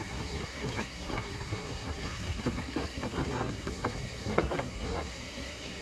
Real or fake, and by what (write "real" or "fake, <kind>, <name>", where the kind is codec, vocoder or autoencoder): fake, codec, SNAC